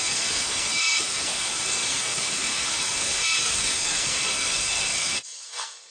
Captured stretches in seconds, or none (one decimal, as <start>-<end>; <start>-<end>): none